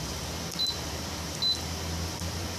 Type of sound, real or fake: real